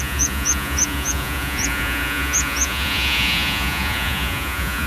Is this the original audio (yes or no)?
no